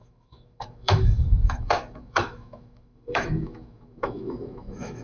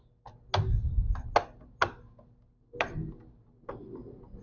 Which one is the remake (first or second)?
first